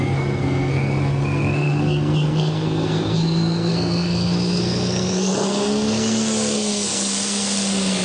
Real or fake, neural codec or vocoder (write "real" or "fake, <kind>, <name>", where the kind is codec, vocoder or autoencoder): fake, codec, SNAC